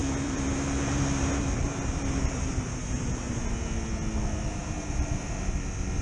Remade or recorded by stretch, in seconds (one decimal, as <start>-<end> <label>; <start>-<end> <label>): 0.0-3.4 remade; 3.4-4.6 recorded; 4.6-5.3 remade; 5.3-6.0 recorded

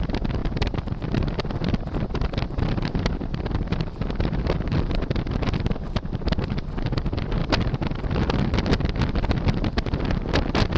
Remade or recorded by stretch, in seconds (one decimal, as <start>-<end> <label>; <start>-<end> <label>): 0.0-0.4 recorded; 0.4-4.9 remade; 4.9-10.8 recorded

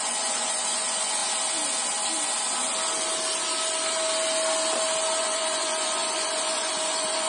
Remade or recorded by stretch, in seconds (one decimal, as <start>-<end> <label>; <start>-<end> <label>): 0.0-1.2 remade; 1.2-5.2 recorded; 5.2-7.3 remade

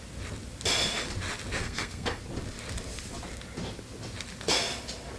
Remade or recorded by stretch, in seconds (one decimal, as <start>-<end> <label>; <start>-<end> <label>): 0.0-1.6 recorded; 1.6-2.2 remade; 2.2-5.2 recorded

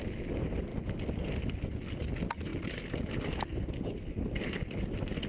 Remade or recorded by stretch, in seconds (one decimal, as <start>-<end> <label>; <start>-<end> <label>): 0.0-5.3 recorded